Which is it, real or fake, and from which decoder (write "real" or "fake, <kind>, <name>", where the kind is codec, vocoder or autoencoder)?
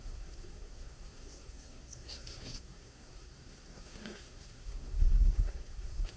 fake, codec, SNAC